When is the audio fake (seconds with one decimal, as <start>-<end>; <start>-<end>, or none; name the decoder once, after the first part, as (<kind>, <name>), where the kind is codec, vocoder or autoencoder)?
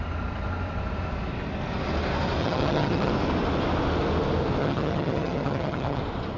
2.4-3.1 (vocoder, HiFi-GAN); 4.6-6.0